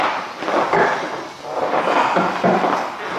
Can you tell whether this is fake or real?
real